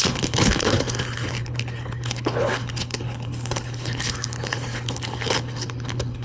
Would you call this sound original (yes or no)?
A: no